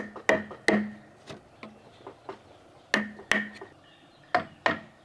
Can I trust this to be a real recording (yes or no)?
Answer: yes